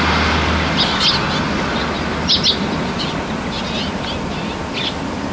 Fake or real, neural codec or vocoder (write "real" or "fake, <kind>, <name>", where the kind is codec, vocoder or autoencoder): real